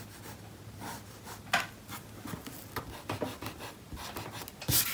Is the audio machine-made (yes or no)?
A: no